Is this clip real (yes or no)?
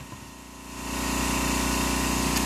yes